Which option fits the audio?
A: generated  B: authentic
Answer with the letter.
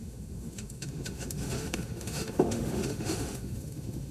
A